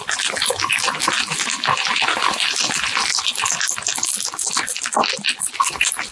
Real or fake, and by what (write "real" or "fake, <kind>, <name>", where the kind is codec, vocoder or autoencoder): real